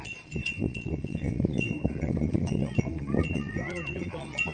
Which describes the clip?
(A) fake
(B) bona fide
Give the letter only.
A